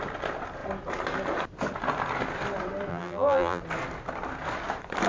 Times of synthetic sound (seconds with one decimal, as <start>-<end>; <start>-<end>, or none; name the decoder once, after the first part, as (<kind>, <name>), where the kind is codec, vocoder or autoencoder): 2.9-3.6 (vocoder, BigVGAN v2)